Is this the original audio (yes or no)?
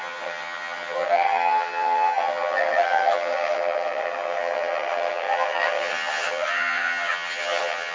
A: no